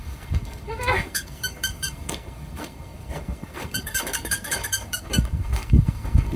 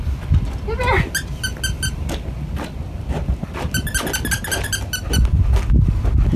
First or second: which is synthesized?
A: first